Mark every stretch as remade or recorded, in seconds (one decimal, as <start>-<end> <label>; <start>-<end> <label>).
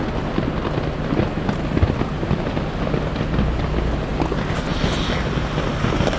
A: 0.0-6.2 recorded